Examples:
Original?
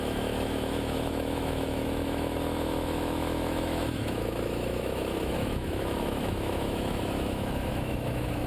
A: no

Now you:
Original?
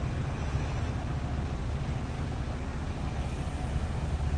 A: yes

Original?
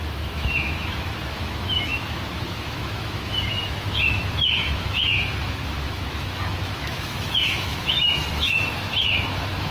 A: no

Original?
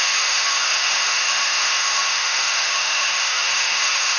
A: no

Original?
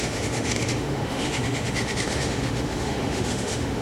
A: no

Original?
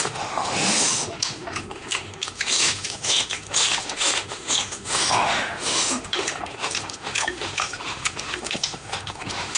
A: no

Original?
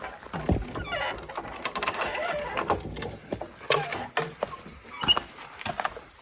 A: yes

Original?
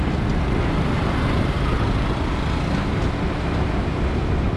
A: yes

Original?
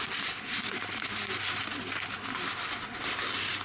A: yes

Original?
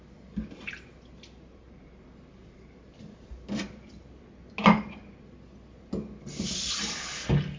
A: yes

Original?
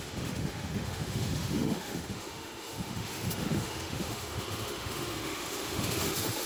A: no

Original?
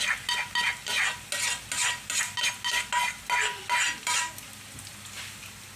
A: yes